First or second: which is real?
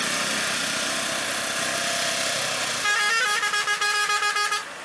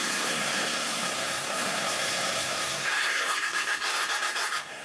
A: first